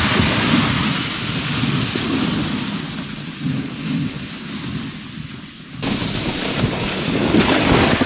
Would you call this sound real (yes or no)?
yes